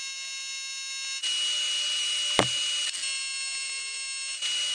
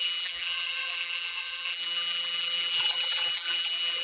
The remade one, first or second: second